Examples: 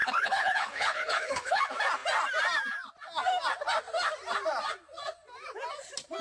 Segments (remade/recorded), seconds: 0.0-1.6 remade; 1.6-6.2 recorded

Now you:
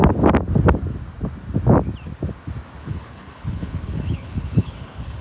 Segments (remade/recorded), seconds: 0.0-2.8 recorded; 2.8-5.2 remade

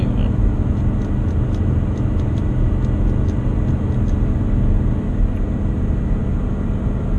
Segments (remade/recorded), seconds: 0.0-7.2 recorded

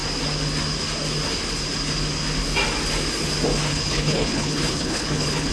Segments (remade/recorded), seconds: 0.0-3.7 recorded; 3.7-5.5 remade

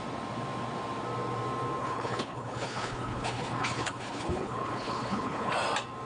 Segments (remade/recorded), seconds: 0.0-1.8 recorded; 1.8-5.5 remade; 5.5-6.1 recorded

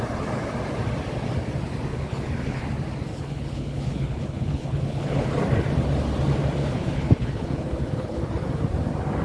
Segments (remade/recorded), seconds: 0.0-1.9 recorded; 1.9-2.6 remade; 2.6-3.1 recorded; 3.1-5.3 remade; 5.3-6.6 recorded; 6.6-8.2 remade; 8.2-9.2 recorded

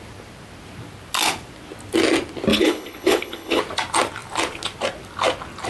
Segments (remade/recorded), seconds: 0.0-2.5 recorded; 2.5-3.6 remade; 3.6-5.7 recorded

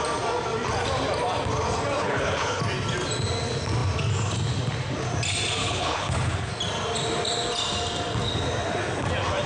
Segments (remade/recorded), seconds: 0.0-2.0 recorded; 2.0-2.6 remade; 2.6-5.6 recorded; 5.6-6.5 remade; 6.5-9.5 recorded